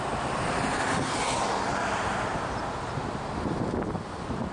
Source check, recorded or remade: recorded